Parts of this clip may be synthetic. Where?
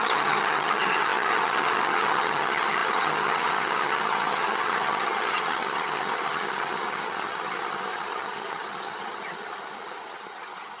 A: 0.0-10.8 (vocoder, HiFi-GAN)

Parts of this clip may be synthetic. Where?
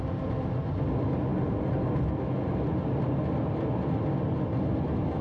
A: none